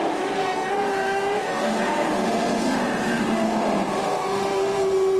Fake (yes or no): yes